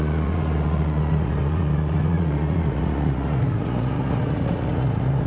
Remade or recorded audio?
remade